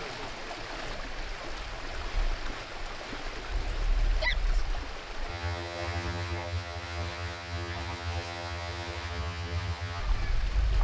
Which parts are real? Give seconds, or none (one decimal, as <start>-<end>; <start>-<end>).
0.0-5.3; 10.0-10.8